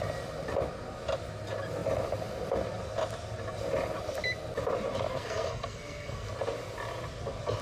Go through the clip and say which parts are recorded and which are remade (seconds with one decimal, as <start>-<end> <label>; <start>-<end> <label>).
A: 0.0-5.1 recorded; 5.1-6.3 remade; 6.3-7.6 recorded